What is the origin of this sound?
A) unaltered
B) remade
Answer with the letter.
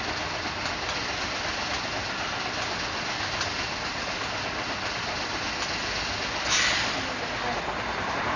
A